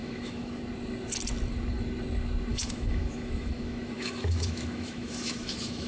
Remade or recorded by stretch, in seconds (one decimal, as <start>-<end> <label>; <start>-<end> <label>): 0.0-0.6 remade; 0.6-2.5 recorded; 2.5-5.9 remade